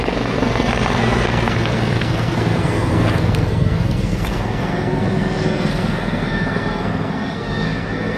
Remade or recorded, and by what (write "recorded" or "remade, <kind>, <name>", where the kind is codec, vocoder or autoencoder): remade, codec, SNAC